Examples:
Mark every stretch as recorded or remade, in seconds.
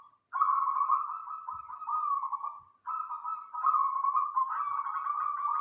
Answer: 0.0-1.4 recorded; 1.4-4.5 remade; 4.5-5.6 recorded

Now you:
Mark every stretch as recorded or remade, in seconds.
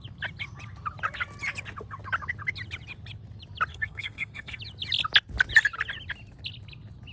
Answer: 0.0-3.7 recorded; 3.7-4.6 remade; 4.6-7.1 recorded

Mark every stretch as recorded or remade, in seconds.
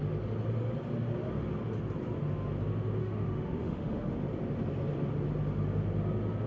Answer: 0.0-3.0 recorded; 3.0-4.2 remade; 4.2-6.5 recorded